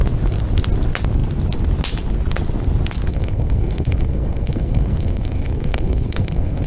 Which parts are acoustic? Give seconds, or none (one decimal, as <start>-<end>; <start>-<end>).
0.0-3.1